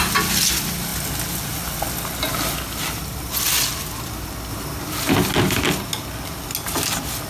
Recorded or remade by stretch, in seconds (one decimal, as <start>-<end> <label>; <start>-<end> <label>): 0.0-7.3 recorded